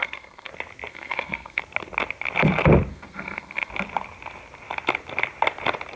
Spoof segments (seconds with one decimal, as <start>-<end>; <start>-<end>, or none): 0.0-0.5; 0.9-1.6; 2.9-3.7